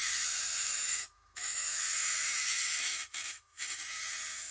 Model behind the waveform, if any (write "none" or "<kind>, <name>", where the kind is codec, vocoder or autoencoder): autoencoder, DAC-VAE